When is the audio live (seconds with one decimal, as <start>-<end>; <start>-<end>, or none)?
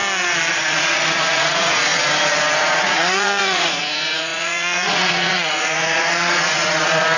0.0-0.5; 1.9-2.6